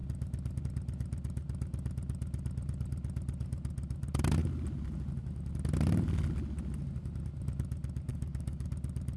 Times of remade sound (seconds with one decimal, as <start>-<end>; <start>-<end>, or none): 8.1-8.7